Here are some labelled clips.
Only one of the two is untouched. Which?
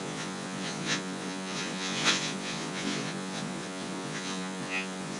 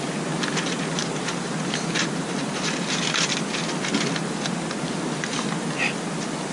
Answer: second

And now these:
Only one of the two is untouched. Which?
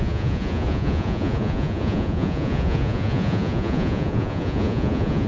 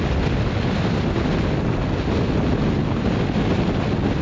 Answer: second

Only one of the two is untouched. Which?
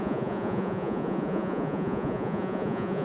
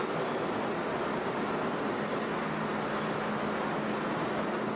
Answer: second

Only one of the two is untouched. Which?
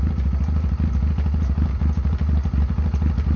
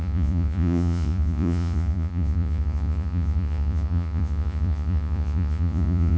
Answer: first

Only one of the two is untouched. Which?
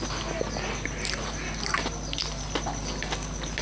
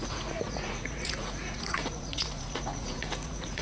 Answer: first